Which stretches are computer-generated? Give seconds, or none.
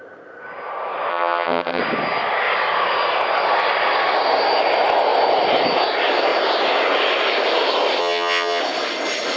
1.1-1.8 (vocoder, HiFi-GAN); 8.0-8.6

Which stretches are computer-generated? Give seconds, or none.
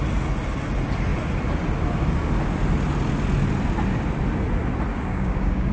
4.9-5.7 (codec, DAC)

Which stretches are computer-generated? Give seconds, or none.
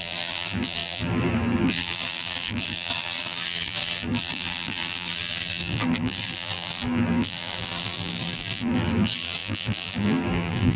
0.0-10.8 (vocoder, BigVGAN v2)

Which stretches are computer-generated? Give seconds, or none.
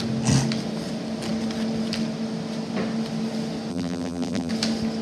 3.7-4.5 (vocoder, BigVGAN v2)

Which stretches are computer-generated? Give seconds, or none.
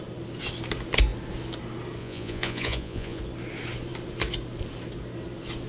2.0-3.2 (vocoder, Vocos)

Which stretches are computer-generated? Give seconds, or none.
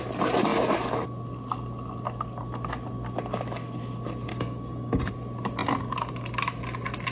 4.3-5.1 (codec, DAC)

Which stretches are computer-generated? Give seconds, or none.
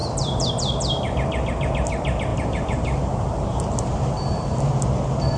0.0-0.5 (vocoder, BigVGAN v2); 2.3-4.7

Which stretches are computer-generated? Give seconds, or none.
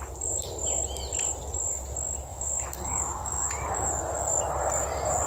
2.3-3.9 (autoencoder, DAC-VAE)